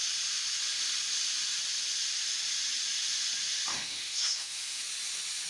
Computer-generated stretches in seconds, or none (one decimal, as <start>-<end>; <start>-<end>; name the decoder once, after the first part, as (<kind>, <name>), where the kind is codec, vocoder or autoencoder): 3.7-4.8 (autoencoder, DAC-VAE)